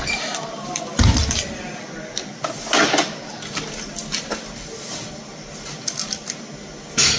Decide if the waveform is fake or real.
real